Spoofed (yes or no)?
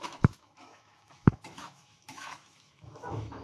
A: yes